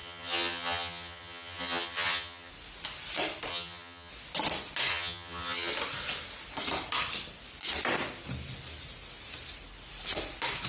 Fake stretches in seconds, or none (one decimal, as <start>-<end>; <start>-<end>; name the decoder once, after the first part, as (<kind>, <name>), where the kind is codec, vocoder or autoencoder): 0.0-2.5 (vocoder, HiFi-GAN); 3.5-4.1; 4.9-5.7